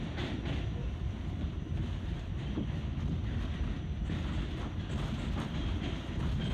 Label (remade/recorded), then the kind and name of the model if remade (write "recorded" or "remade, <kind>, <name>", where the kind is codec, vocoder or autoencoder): recorded